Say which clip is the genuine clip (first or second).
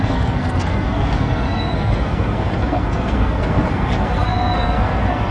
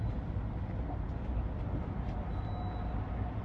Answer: second